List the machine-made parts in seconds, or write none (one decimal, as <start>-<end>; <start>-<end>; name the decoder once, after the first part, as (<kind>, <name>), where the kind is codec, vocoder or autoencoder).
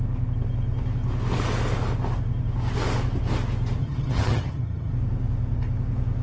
3.8-4.9 (vocoder, HiFi-GAN)